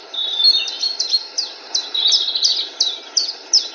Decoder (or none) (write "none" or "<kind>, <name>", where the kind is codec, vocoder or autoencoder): none